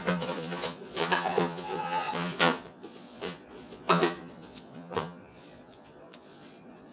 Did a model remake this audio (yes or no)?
yes